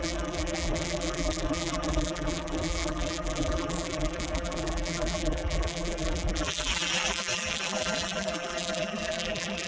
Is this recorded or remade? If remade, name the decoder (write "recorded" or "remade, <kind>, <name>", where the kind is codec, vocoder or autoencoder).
remade, vocoder, BigVGAN v2